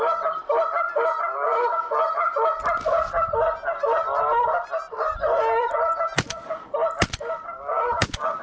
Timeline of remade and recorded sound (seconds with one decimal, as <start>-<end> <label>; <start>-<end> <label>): 0.0-8.4 recorded